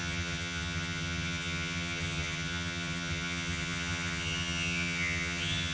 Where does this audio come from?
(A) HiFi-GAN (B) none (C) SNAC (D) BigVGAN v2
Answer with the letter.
A